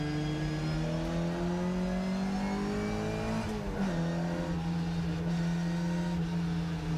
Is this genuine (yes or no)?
yes